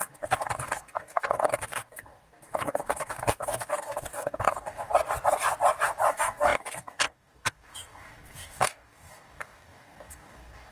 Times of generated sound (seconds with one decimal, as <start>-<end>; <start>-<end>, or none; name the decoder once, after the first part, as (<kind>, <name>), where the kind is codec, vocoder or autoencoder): 0.0-4.9 (codec, DAC); 6.1-10.7